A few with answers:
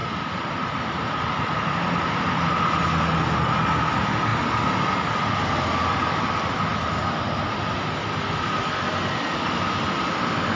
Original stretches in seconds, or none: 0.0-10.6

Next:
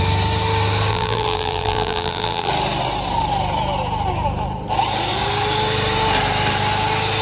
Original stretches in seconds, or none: 0.0-0.9; 2.5-7.2

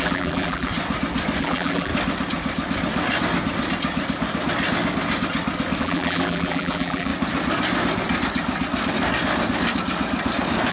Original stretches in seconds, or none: 0.7-1.4; 1.9-5.8; 7.1-10.7

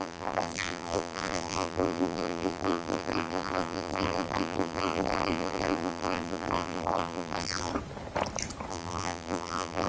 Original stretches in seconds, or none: 7.7-8.7

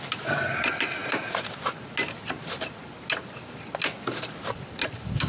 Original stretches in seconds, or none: 0.0-5.3